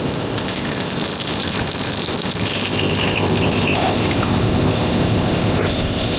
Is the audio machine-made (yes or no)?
yes